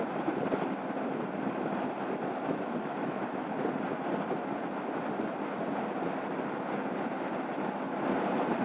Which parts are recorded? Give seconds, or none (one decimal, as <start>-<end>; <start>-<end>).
0.0-2.5; 3.2-8.6